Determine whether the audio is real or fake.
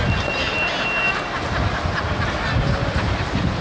real